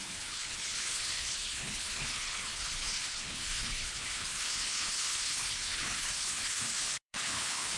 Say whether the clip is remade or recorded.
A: remade